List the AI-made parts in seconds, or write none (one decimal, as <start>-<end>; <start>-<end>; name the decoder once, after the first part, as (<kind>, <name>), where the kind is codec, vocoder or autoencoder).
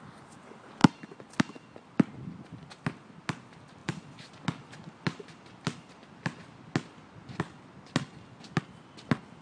none